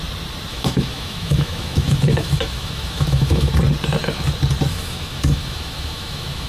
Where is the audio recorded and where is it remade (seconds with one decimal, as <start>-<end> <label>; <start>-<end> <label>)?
0.0-0.5 recorded; 0.5-3.5 remade; 3.5-4.7 recorded; 4.7-6.5 remade